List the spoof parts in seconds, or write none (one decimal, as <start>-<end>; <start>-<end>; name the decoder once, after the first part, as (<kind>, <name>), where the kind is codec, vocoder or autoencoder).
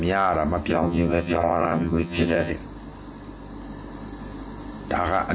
0.7-2.5 (vocoder, HiFi-GAN)